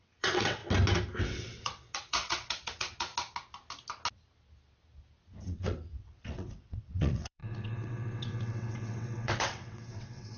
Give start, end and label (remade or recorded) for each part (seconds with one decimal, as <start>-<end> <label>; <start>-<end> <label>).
0.0-0.6 remade; 0.6-1.2 recorded; 1.2-3.1 remade; 3.1-5.4 recorded; 5.4-10.4 remade